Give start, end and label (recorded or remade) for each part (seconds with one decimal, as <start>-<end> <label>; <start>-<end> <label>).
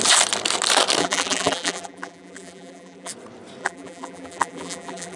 0.0-1.0 recorded; 1.0-3.1 remade; 3.1-3.6 recorded; 3.6-5.2 remade